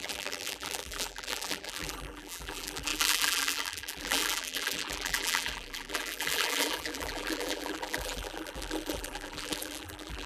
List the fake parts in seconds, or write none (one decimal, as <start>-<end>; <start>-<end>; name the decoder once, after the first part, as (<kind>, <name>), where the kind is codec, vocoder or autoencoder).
0.0-10.3 (vocoder, BigVGAN v2)